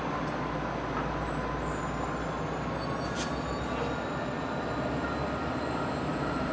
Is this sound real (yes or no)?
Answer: yes